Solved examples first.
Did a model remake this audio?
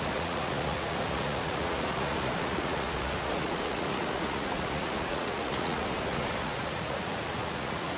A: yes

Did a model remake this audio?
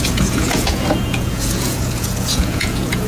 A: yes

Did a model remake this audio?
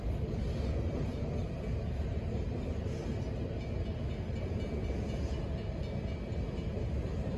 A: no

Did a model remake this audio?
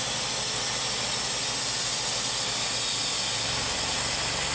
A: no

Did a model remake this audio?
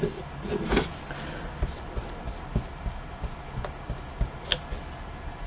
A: no